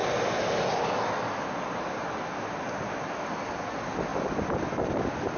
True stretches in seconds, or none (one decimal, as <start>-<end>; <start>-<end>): 0.0-5.4